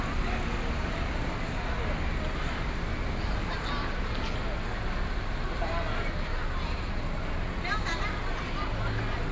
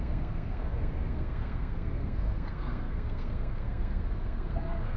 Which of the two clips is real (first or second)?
first